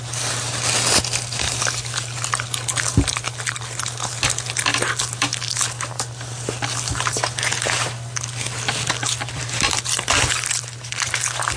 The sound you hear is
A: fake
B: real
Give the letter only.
B